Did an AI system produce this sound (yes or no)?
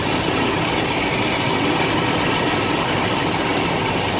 no